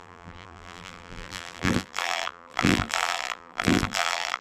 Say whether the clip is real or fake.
fake